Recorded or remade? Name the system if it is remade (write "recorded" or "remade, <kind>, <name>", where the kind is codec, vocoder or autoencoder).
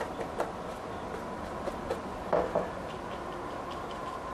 recorded